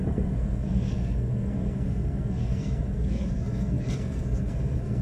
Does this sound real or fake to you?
fake